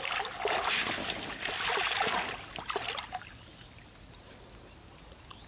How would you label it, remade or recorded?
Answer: recorded